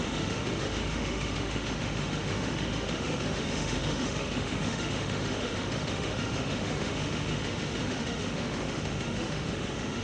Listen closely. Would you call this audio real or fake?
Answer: fake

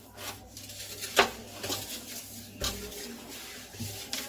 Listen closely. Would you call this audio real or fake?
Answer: real